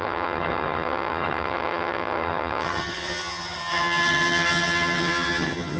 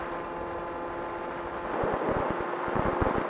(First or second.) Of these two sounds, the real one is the second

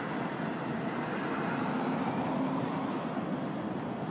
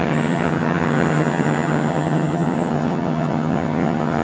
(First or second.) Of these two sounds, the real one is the first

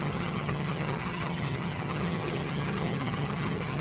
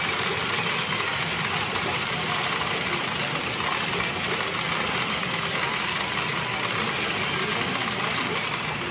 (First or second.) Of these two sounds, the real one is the second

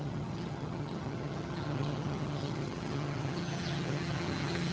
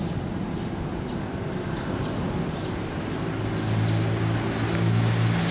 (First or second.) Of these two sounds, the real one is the second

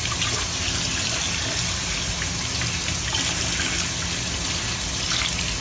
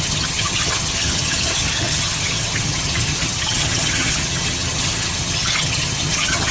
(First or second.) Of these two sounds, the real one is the first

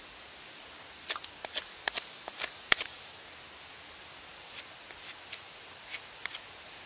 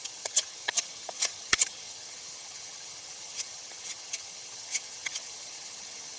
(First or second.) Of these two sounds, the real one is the first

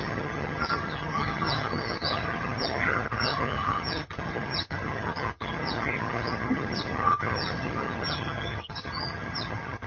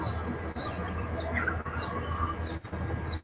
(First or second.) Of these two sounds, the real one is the second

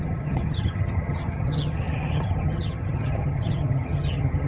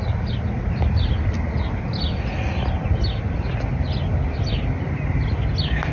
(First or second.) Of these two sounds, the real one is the second